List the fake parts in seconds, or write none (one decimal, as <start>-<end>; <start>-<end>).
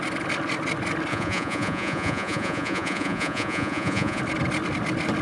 1.1-4.2